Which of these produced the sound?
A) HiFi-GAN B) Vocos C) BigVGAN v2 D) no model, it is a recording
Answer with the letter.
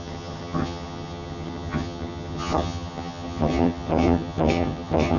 A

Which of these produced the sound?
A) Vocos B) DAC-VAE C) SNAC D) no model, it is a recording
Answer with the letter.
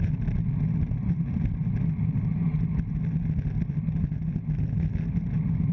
D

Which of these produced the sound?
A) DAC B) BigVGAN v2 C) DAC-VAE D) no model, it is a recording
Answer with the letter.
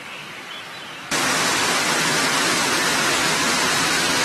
D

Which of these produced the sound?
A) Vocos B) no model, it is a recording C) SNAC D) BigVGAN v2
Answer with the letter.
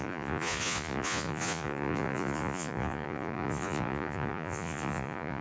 A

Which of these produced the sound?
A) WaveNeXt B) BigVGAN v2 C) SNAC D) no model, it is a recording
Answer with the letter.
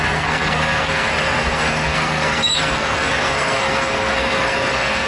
C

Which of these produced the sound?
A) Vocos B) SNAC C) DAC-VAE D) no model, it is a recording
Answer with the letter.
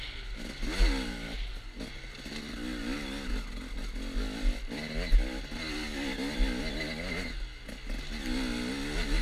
D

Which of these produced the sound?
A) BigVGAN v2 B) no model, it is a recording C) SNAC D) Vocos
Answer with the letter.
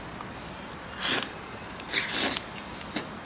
B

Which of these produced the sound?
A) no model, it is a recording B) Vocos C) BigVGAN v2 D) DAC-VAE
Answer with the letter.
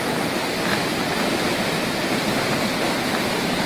A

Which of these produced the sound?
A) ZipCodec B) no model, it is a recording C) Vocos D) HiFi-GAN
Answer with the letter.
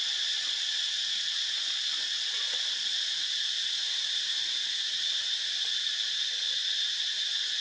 B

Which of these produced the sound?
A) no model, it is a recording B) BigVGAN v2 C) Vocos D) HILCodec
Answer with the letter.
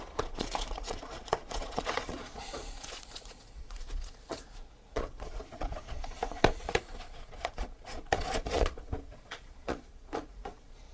C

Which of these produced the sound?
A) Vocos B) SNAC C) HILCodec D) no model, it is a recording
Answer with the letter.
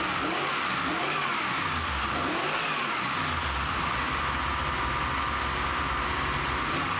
D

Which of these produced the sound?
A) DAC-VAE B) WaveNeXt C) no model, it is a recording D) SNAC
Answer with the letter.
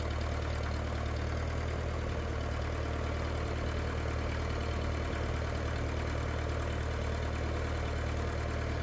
C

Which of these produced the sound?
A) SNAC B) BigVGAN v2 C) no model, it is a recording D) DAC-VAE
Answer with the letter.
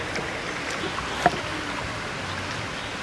C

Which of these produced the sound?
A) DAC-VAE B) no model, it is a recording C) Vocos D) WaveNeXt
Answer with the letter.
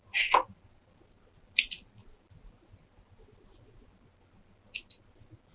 B